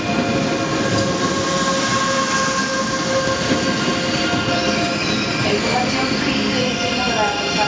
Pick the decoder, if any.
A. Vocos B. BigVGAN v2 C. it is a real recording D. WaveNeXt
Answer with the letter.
C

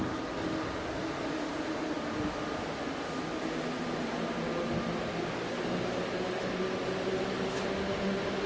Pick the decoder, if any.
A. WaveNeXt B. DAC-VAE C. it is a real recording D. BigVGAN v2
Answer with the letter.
C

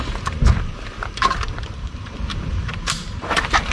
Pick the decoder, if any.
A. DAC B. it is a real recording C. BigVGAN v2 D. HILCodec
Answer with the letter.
C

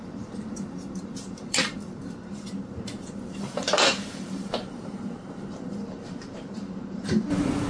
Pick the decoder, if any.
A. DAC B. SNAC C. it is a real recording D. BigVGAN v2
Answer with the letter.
D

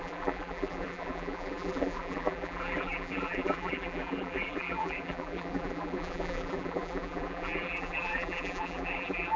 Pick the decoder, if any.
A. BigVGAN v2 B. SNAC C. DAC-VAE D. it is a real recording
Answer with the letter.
A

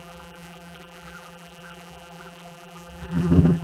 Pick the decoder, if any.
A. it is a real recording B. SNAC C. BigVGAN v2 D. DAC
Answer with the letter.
C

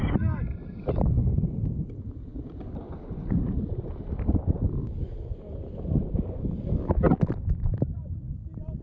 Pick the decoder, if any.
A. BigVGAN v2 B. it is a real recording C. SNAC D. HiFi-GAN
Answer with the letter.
B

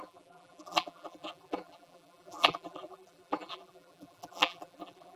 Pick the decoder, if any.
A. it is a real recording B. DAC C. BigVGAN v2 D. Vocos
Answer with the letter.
C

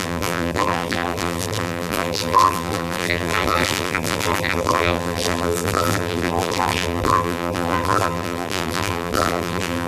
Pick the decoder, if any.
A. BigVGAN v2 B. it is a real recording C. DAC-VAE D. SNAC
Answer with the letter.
A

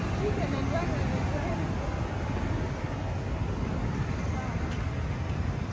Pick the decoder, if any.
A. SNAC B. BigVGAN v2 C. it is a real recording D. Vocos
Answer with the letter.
C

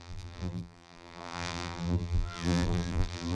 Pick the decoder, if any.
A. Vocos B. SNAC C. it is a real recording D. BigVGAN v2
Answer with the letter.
D